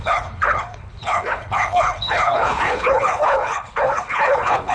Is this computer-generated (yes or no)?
yes